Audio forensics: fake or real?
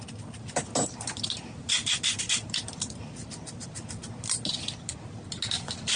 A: real